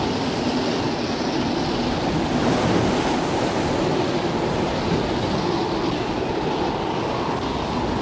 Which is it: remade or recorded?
recorded